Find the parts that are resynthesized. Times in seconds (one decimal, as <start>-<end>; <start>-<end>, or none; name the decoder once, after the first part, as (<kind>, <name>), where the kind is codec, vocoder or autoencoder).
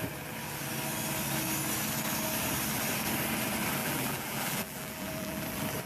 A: 3.8-5.4 (vocoder, BigVGAN v2)